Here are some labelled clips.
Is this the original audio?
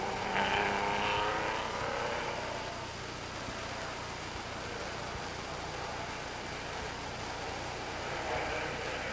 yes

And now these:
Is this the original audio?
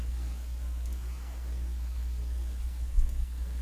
no